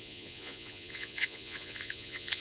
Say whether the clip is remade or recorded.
remade